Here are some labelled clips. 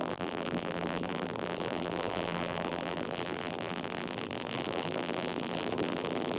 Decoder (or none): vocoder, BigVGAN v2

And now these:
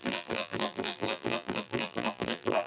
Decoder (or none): vocoder, BigVGAN v2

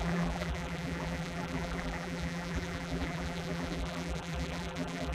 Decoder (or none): vocoder, BigVGAN v2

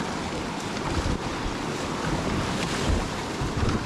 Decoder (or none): vocoder, BigVGAN v2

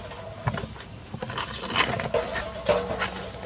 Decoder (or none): none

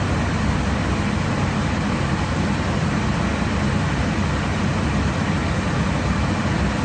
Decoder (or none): none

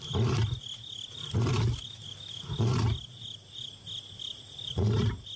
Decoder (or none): none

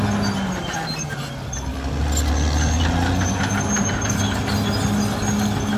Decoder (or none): none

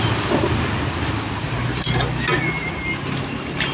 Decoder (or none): none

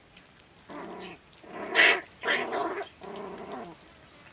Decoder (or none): none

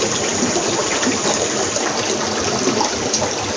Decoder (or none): none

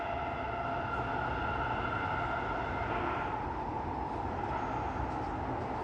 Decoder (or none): none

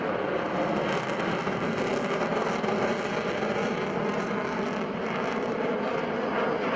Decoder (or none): none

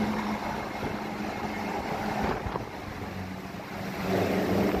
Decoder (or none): none